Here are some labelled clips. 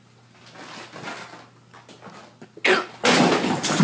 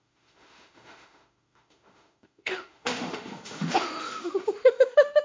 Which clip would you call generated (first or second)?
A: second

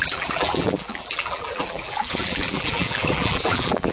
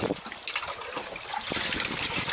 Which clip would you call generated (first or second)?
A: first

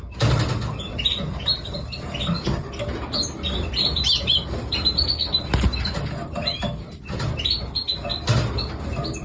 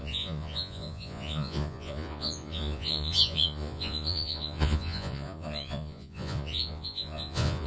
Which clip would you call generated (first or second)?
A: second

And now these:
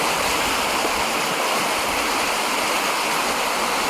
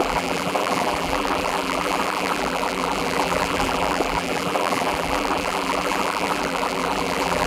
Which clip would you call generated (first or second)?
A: second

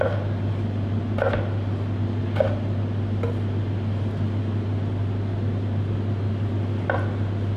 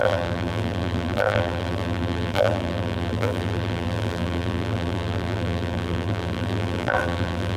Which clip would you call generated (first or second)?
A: second